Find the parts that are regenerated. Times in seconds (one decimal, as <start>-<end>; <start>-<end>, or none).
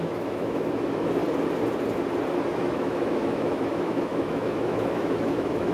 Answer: 0.0-1.2; 2.5-5.7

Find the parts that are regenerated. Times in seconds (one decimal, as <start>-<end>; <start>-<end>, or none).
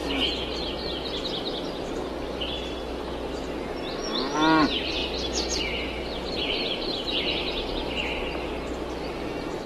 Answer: none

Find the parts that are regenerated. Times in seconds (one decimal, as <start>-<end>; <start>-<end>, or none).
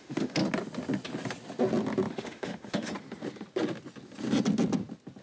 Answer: 0.0-0.4; 2.1-2.9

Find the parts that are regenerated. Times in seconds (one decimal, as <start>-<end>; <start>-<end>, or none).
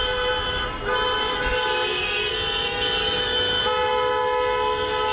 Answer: 3.0-3.6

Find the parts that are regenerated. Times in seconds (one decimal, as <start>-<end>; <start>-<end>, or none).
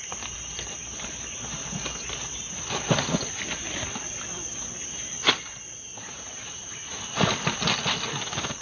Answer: none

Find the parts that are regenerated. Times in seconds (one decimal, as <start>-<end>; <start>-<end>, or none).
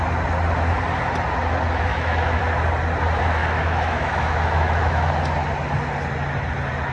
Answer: 1.9-2.4; 3.4-5.1